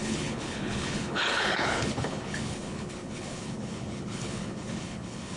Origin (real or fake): fake